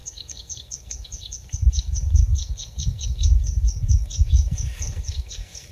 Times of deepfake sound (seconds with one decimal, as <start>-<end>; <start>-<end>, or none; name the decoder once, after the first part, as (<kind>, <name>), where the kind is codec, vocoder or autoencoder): 0.0-5.7 (codec, SNAC)